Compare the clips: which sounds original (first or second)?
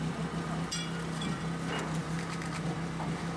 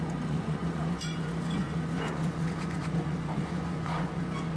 first